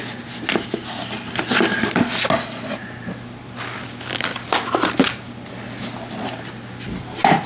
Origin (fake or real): real